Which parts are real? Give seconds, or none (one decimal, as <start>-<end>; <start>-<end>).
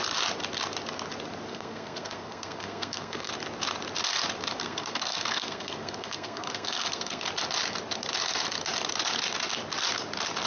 0.0-1.5; 3.3-4.6; 7.2-10.5